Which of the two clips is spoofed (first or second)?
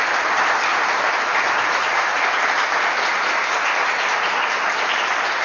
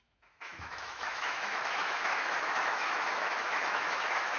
second